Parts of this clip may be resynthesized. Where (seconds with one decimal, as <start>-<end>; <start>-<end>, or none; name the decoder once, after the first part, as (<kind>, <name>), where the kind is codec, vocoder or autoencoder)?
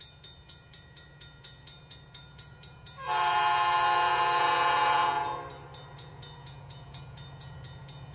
0.0-5.4 (vocoder, Vocos); 5.9-8.1